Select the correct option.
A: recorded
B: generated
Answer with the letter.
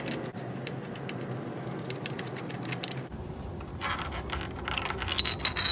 A